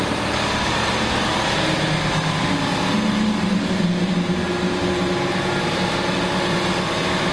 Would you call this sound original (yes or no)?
yes